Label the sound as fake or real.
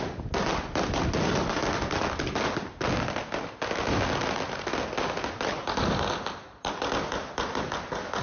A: real